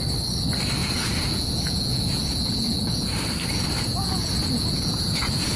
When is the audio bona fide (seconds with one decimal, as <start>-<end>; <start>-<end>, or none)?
0.0-0.8; 3.1-3.9